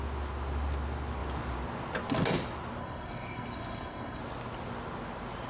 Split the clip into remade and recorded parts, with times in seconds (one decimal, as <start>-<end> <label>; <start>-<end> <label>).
0.0-2.8 recorded; 2.8-4.2 remade; 4.2-5.5 recorded